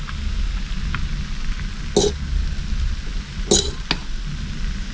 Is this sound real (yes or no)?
yes